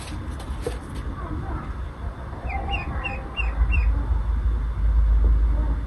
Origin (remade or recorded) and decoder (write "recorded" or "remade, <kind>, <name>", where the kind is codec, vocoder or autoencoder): recorded